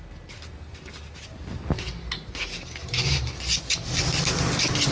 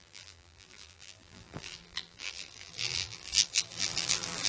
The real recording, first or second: first